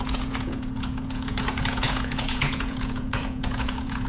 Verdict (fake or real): fake